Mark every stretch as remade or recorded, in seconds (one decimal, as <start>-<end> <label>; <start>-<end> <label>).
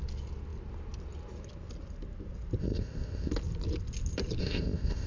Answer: 0.0-2.6 recorded; 2.6-3.3 remade; 3.3-4.4 recorded; 4.4-5.1 remade